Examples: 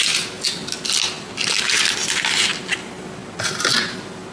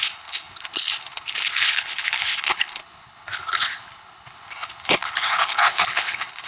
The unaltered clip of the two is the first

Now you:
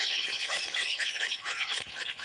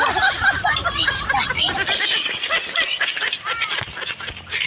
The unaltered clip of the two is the second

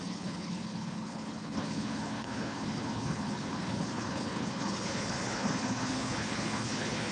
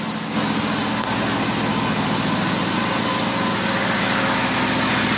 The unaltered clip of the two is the second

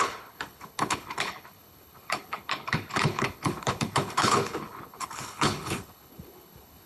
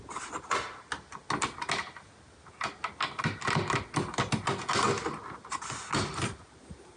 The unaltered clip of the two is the second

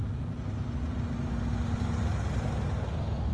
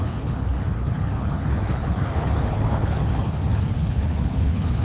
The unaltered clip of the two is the first